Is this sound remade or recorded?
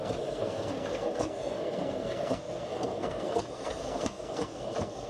remade